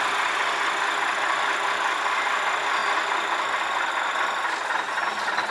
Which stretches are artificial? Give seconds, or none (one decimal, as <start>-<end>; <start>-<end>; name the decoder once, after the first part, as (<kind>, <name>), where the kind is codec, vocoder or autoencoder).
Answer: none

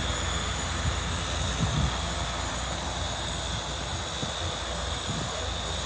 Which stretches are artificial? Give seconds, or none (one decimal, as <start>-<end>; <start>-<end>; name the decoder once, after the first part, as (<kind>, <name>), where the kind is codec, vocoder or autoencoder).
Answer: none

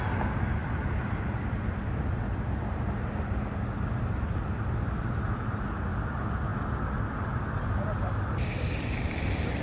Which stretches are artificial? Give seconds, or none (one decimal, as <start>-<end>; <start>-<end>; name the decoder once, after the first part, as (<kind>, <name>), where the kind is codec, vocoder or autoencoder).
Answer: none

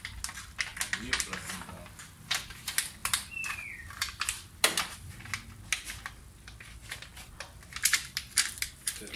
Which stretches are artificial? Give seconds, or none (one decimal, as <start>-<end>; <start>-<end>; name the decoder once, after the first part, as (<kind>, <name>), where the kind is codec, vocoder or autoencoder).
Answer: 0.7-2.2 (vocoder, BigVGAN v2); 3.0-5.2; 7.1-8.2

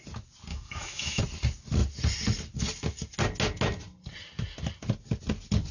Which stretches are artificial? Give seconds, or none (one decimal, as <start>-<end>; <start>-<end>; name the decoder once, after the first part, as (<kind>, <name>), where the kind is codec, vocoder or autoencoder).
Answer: 0.5-1.2 (autoencoder, DAC-VAE)

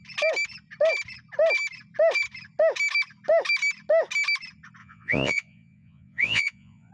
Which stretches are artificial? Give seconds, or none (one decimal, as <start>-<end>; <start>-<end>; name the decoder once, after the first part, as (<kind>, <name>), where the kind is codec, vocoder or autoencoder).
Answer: 4.8-6.9 (vocoder, Vocos)

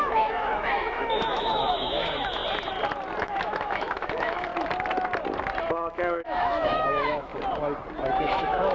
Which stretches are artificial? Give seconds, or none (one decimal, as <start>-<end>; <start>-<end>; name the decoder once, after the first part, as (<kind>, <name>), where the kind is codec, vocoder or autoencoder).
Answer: 0.0-2.4 (autoencoder, DAC-VAE); 3.2-4.5; 5.7-7.3; 8.2-8.7